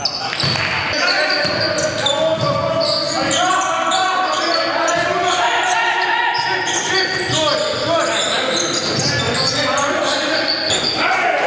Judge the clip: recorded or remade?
recorded